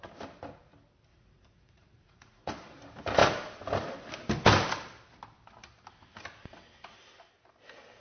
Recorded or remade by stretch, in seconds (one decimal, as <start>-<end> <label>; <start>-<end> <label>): 0.0-1.1 recorded; 1.1-2.5 remade; 2.5-8.0 recorded